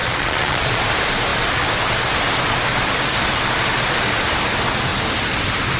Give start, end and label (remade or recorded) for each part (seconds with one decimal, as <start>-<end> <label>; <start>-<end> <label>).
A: 0.0-0.8 remade; 0.8-5.8 recorded